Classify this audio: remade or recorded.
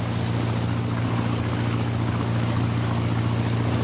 recorded